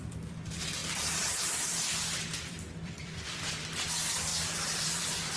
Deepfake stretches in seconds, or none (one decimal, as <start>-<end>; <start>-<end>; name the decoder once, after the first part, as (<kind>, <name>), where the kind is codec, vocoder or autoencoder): 0.8-3.9 (vocoder, BigVGAN v2); 4.3-5.4